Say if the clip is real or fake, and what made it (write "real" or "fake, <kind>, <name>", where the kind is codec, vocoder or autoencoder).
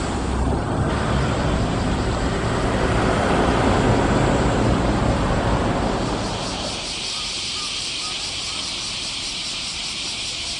real